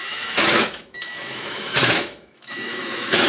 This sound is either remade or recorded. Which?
remade